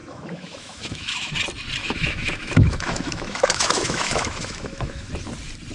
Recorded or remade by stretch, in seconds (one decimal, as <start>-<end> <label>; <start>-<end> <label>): 0.0-1.3 remade; 1.3-1.8 recorded; 1.8-5.1 remade; 5.1-5.7 recorded